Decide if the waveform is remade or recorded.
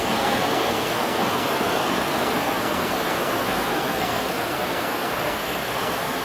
remade